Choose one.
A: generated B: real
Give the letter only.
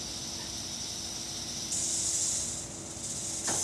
B